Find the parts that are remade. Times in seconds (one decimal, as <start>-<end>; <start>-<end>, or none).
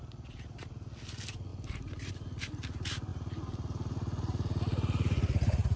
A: 0.0-1.5; 2.1-3.1